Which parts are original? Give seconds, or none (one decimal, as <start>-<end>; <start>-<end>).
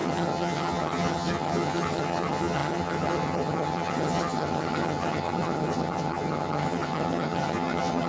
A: none